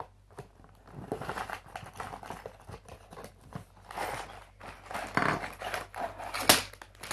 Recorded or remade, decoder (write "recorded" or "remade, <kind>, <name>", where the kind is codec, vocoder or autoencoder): recorded